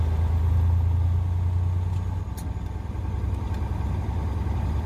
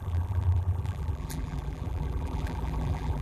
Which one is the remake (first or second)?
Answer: second